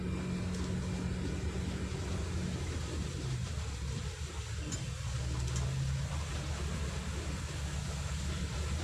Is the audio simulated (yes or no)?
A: no